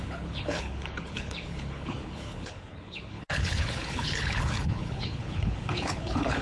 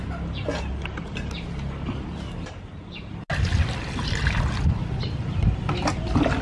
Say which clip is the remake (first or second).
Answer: first